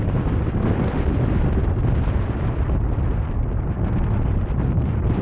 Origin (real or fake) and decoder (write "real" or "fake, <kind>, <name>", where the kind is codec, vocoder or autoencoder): real